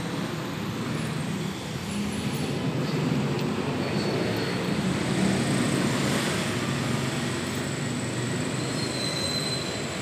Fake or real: real